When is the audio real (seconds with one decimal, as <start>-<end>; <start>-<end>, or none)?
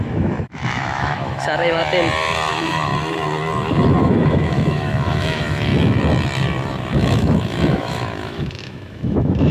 1.8-2.5; 2.9-4.0; 5.7-6.9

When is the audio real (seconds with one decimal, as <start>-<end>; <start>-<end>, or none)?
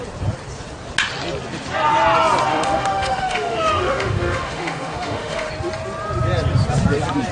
0.0-2.5; 5.5-7.3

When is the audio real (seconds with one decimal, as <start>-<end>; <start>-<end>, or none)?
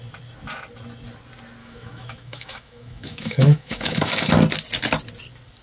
0.0-1.6; 4.3-5.6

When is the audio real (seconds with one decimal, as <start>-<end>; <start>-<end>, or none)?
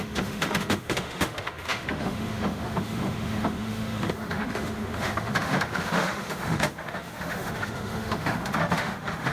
none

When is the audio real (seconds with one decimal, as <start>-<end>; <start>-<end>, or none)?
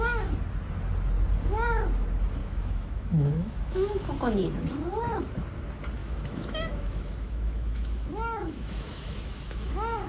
0.0-2.4; 4.1-6.0; 9.7-10.1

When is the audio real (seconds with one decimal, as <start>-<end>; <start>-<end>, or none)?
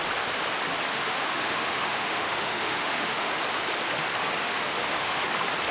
0.0-0.9; 3.3-4.4; 5.2-5.7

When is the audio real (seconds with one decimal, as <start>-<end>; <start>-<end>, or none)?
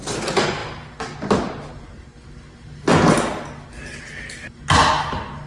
0.0-5.5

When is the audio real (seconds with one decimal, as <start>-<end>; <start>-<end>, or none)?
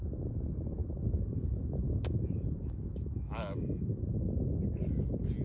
0.0-0.8; 4.0-5.4